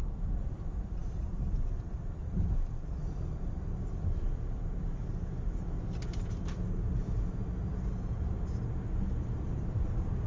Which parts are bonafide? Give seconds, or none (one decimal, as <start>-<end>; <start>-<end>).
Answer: 5.0-9.3